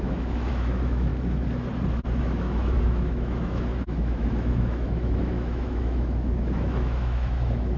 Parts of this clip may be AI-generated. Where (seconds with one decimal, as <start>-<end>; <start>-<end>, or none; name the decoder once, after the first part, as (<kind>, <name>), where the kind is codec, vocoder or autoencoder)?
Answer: 0.0-1.1 (autoencoder, DAC-VAE); 2.2-7.8